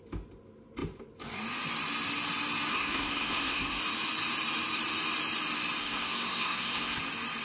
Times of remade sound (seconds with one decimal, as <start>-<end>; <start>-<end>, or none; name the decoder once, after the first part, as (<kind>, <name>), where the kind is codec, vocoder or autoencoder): 2.7-3.8 (codec, SNAC); 5.8-7.0